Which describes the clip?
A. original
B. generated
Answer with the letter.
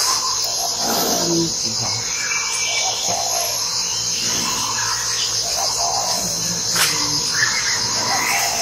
A